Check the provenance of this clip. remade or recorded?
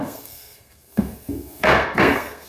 remade